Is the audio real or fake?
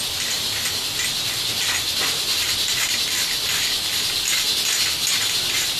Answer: real